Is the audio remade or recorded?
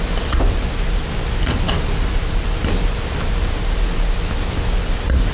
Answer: recorded